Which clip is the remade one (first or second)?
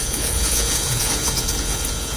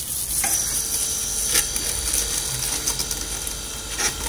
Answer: first